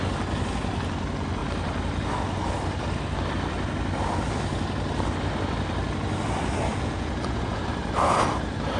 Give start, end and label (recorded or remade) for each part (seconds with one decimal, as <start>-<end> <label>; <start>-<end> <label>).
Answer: 0.0-6.7 recorded; 6.7-7.6 remade; 7.6-8.8 recorded